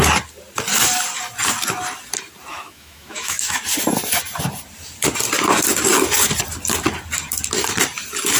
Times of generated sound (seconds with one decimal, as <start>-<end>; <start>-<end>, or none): 2.5-3.6

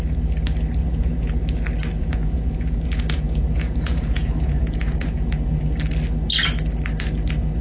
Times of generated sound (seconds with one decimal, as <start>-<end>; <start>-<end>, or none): 0.8-1.3; 2.0-5.6

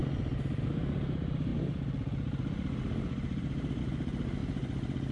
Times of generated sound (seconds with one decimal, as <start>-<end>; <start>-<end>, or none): 0.7-1.5; 3.8-4.4

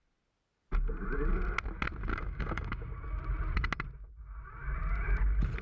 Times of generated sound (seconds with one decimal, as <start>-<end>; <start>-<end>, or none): 2.1-3.2

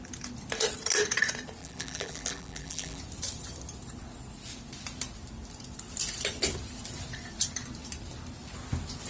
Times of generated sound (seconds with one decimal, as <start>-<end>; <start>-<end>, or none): 1.6-3.0